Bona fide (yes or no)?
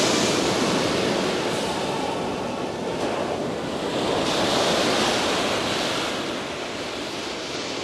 yes